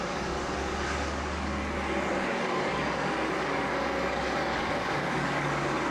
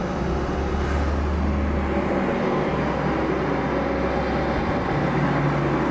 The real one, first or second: second